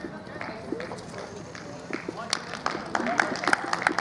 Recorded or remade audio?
recorded